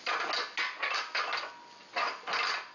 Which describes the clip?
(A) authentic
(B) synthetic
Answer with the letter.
A